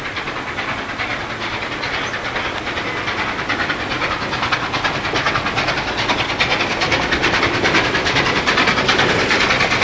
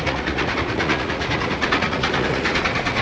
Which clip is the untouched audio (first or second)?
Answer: first